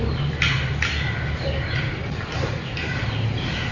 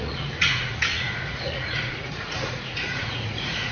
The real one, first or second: first